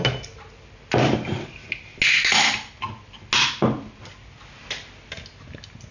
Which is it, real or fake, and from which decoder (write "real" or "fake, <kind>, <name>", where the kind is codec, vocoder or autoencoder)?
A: real